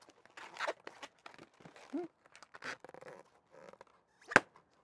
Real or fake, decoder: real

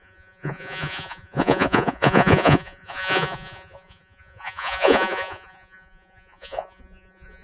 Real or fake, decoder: fake, vocoder, Vocos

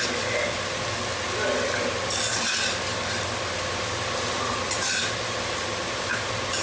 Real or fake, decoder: real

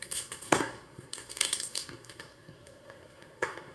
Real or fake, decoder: fake, codec, SNAC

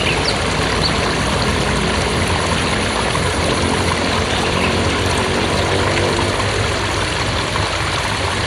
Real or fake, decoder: real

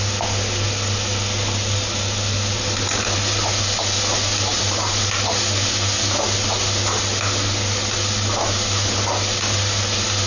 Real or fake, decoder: real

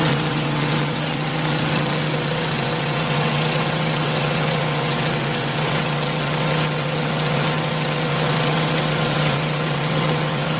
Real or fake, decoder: fake, vocoder, WaveNeXt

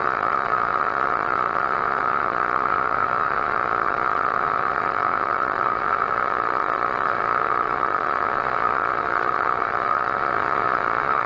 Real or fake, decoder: fake, vocoder, Vocos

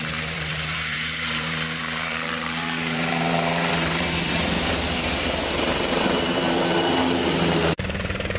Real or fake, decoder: fake, vocoder, BigVGAN v2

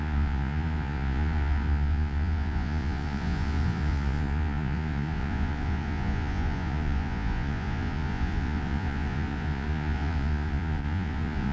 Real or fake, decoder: fake, vocoder, Vocos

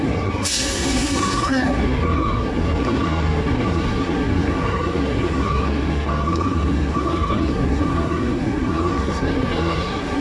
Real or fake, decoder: fake, codec, SNAC